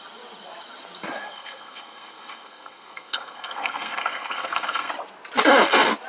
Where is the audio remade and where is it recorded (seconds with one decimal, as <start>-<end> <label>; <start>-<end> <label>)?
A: 0.0-1.2 recorded; 1.2-4.9 remade; 4.9-6.1 recorded